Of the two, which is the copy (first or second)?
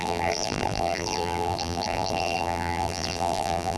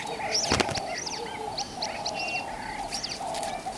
first